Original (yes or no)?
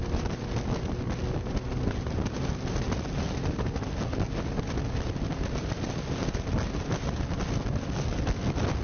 yes